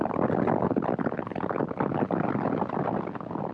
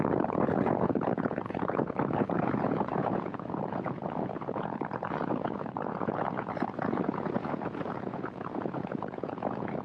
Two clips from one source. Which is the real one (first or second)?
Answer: first